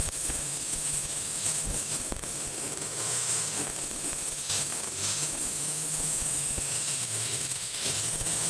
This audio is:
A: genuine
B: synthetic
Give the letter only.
B